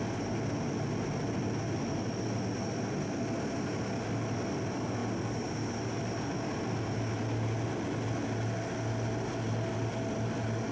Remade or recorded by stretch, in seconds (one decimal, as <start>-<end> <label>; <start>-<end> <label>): 0.0-10.7 recorded